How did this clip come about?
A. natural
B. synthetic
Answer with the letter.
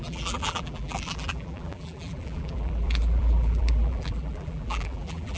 B